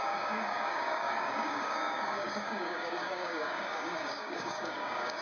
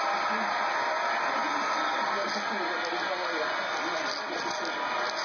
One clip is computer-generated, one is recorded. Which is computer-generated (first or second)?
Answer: first